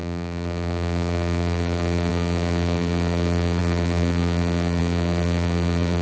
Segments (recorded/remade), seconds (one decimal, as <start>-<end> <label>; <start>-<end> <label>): 0.0-6.0 remade